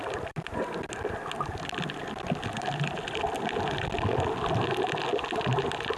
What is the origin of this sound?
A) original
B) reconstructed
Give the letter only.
A